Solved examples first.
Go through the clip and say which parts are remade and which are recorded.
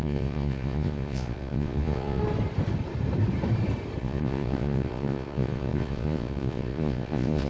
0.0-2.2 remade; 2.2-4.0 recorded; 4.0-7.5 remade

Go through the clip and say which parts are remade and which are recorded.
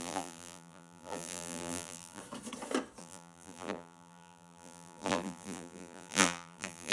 0.0-2.2 remade; 2.2-3.0 recorded; 3.0-6.9 remade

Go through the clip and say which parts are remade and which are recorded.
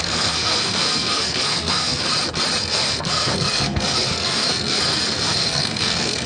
0.0-2.1 remade; 2.1-2.6 recorded; 2.6-6.3 remade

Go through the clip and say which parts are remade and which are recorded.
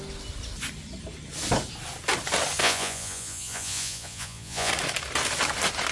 0.0-2.6 recorded; 2.6-4.7 remade; 4.7-5.9 recorded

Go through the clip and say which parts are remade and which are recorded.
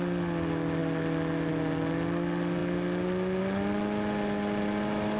0.0-5.2 recorded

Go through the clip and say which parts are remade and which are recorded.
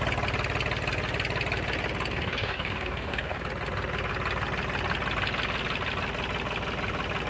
0.0-2.1 recorded; 2.1-3.4 remade; 3.4-7.3 recorded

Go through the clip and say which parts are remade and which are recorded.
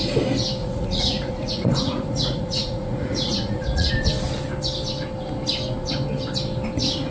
0.0-0.6 recorded; 0.6-3.9 remade; 3.9-7.1 recorded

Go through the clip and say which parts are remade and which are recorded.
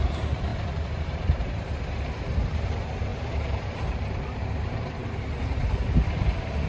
0.0-6.7 remade